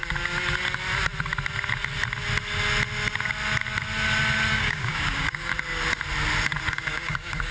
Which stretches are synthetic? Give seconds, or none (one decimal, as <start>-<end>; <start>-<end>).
4.5-5.5; 6.7-7.5